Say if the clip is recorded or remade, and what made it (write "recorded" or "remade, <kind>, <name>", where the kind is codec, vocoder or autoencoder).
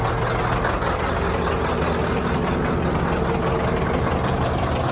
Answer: recorded